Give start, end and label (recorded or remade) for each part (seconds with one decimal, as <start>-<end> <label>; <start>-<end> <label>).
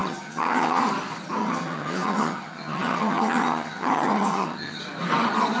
0.0-0.8 remade; 0.8-1.4 recorded; 1.4-4.8 remade; 4.8-5.6 recorded